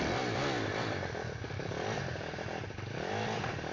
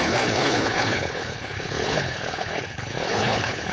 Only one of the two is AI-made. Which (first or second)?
second